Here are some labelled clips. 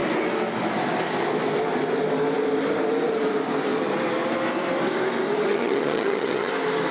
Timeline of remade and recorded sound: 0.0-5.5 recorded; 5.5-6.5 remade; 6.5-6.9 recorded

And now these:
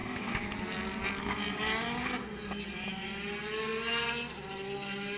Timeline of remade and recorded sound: 0.0-5.2 recorded

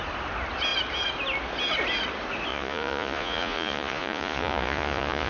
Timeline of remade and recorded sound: 0.0-2.5 recorded; 2.5-5.3 remade

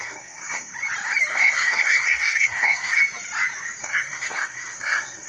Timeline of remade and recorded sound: 0.0-0.7 remade; 0.7-1.3 recorded; 1.3-3.0 remade; 3.0-3.8 recorded; 3.8-5.3 remade

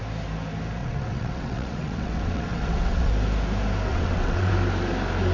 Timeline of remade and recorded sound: 0.0-0.8 recorded; 0.8-3.1 remade; 3.1-3.9 recorded; 3.9-4.5 remade; 4.5-5.3 recorded

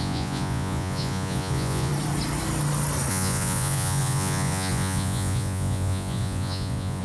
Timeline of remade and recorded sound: 0.0-1.9 remade; 1.9-3.1 recorded; 3.1-7.0 remade

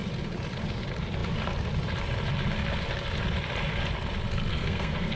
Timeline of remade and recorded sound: 0.0-4.5 recorded; 4.5-5.2 remade